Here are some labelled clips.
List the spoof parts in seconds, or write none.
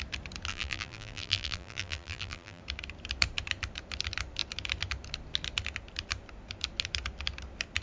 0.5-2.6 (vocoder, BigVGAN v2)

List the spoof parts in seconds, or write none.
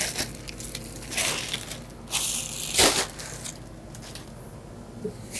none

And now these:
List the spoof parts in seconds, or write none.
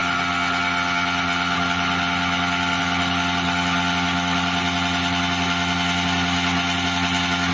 none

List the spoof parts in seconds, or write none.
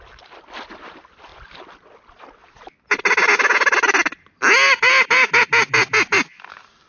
none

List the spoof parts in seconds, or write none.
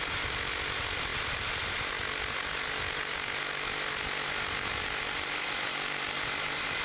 none